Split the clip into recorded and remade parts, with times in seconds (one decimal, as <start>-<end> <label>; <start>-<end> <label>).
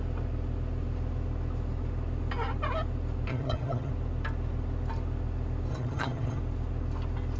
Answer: 0.0-3.3 recorded; 3.3-3.9 remade; 3.9-5.7 recorded; 5.7-6.4 remade; 6.4-7.4 recorded